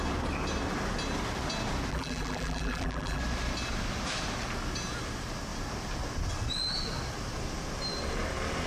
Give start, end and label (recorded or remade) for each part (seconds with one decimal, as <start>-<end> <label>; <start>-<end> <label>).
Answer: 0.0-1.9 recorded; 1.9-3.2 remade; 3.2-8.7 recorded